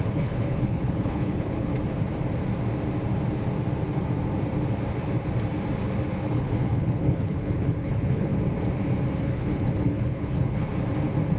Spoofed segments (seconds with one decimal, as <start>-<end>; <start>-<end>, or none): 0.0-1.7; 6.2-8.3; 9.2-10.7

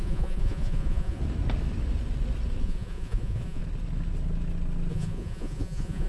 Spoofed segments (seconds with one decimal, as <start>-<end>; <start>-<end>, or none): 0.0-1.2; 2.6-3.6; 4.9-6.1